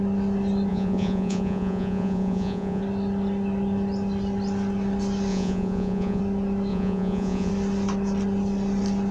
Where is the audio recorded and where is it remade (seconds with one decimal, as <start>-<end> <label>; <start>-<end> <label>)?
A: 0.0-0.7 recorded; 0.7-2.8 remade; 2.8-5.3 recorded; 5.3-6.2 remade; 6.2-6.7 recorded; 6.7-7.5 remade; 7.5-9.1 recorded